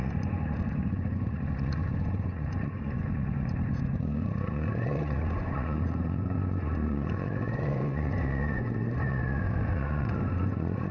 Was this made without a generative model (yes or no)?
no